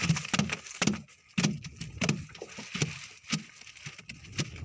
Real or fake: real